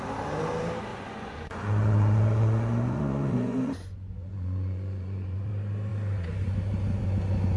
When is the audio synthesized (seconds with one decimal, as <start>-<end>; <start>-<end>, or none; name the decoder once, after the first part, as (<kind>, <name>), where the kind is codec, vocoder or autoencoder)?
0.9-5.5 (vocoder, Vocos)